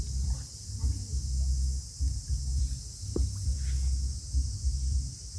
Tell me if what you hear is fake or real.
real